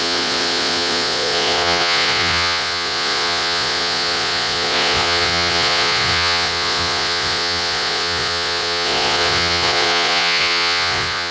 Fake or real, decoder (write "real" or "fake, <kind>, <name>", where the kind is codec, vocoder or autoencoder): fake, vocoder, Vocos